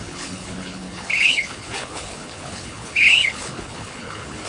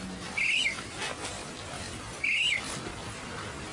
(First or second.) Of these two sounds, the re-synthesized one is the first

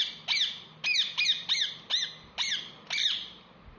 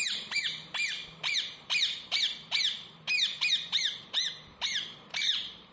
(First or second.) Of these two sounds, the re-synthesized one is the second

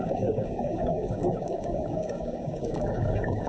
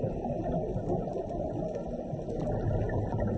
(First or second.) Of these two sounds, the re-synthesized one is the first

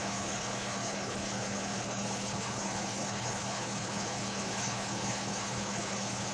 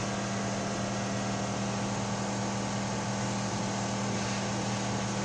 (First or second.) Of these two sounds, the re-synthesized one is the first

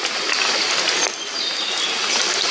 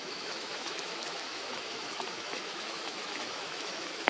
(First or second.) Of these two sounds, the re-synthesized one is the second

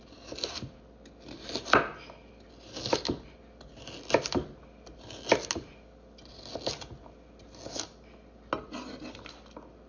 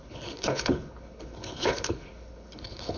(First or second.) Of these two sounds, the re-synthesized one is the second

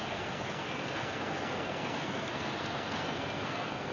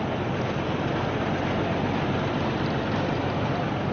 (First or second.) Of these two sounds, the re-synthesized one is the first